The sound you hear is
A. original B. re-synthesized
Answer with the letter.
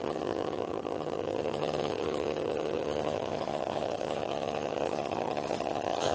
B